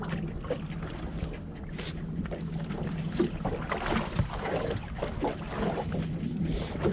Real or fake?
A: real